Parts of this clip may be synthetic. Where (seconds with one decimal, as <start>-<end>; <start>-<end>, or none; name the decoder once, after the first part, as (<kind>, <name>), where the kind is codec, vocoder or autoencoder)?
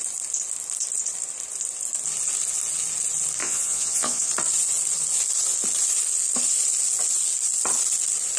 3.4-4.3 (vocoder, Vocos)